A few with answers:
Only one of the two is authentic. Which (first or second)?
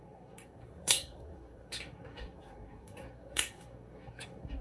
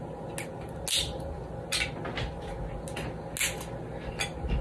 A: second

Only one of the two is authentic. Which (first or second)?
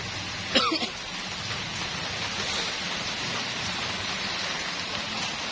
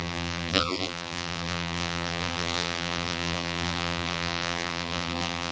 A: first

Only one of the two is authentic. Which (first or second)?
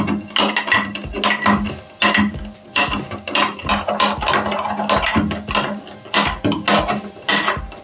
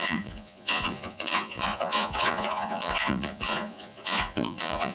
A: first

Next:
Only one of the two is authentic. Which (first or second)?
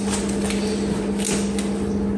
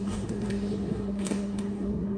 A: first